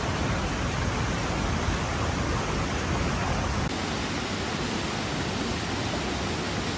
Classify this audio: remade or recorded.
recorded